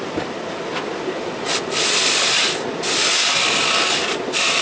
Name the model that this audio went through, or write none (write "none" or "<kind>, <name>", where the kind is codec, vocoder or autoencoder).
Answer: vocoder, BigVGAN v2